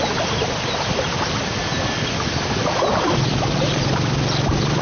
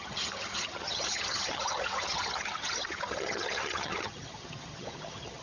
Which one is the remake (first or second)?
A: second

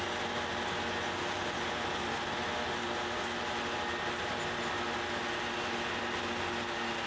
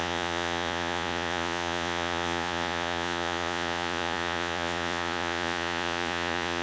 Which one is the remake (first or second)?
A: second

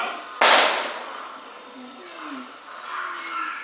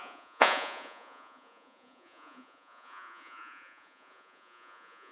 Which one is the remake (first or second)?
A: second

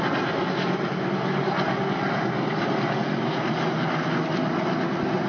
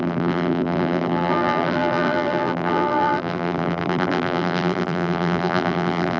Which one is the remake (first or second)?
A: second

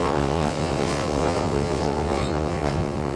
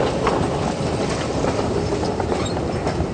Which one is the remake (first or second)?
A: first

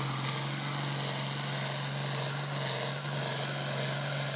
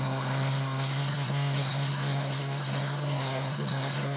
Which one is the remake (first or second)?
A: second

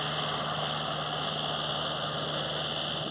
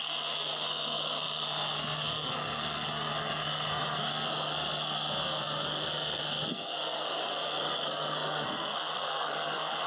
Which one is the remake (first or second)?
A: second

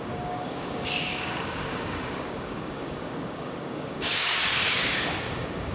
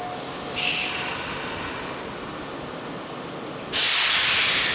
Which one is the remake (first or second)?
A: first